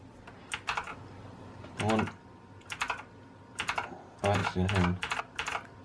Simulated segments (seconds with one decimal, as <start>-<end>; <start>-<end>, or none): 0.9-1.8; 4.4-5.2